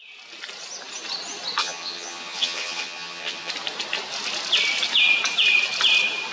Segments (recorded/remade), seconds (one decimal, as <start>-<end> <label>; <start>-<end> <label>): 0.0-1.6 recorded; 1.6-3.5 remade; 3.5-6.3 recorded

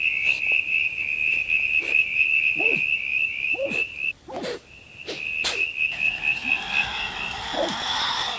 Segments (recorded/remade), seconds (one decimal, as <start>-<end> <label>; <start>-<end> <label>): 0.0-8.4 recorded

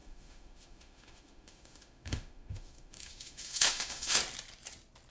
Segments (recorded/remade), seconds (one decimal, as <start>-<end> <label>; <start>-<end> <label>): 0.0-4.2 remade; 4.2-5.1 recorded

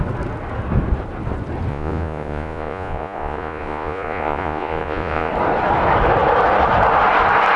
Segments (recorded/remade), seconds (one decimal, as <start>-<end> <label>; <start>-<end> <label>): 0.0-1.7 recorded; 1.7-5.3 remade; 5.3-7.6 recorded